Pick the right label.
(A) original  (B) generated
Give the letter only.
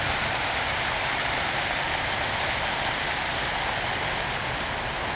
A